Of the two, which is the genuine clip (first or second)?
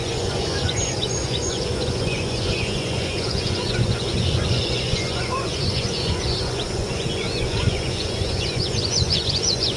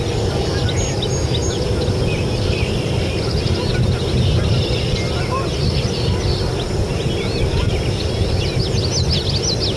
second